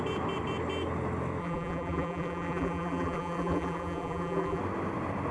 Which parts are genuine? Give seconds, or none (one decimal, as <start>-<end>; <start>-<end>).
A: 0.0-1.4; 4.6-5.3